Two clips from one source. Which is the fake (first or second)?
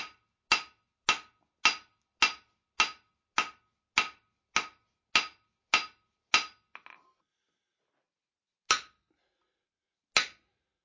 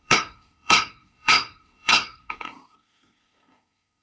second